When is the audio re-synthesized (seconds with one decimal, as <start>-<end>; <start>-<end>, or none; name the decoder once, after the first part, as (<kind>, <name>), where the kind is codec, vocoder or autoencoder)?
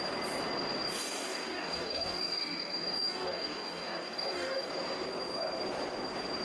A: 0.9-4.7 (codec, DAC)